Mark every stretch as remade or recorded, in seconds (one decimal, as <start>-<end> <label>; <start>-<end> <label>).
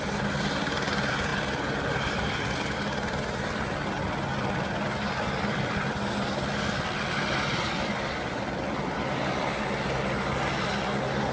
0.0-11.3 recorded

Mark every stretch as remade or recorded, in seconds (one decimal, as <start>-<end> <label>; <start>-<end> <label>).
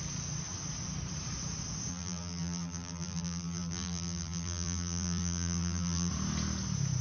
0.0-1.9 recorded; 1.9-6.1 remade; 6.1-7.0 recorded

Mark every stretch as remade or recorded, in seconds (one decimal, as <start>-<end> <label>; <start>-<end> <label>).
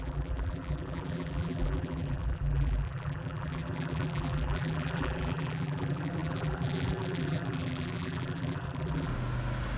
0.0-9.1 remade; 9.1-9.8 recorded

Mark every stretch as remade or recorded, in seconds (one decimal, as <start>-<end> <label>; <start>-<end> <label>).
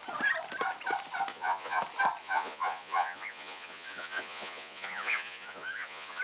0.0-1.3 recorded; 1.3-1.8 remade; 1.8-2.2 recorded; 2.2-6.2 remade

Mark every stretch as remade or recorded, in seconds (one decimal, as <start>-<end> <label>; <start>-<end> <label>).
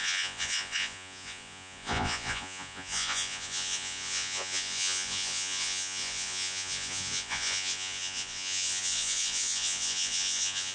0.0-10.7 remade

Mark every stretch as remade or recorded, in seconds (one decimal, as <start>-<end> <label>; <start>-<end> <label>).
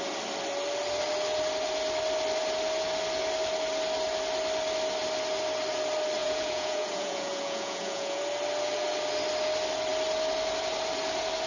0.0-6.2 recorded; 6.2-8.2 remade; 8.2-11.5 recorded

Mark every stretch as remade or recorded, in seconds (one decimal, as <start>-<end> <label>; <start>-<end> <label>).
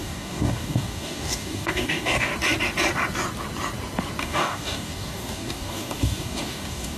0.0-2.3 remade; 2.3-4.2 recorded; 4.2-7.0 remade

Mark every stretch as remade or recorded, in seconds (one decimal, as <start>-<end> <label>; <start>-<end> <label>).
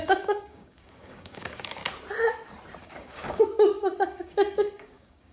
0.0-1.8 remade; 1.8-2.8 recorded; 2.8-5.3 remade